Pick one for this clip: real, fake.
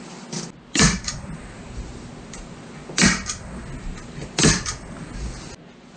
real